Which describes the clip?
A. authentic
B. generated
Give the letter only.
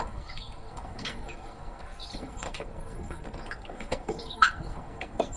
B